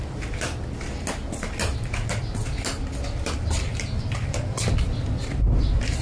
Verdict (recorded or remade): recorded